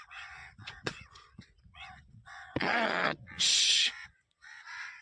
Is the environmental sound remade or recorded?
remade